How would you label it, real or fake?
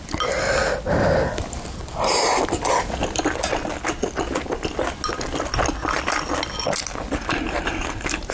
real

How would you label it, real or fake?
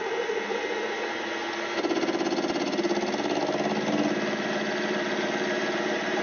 real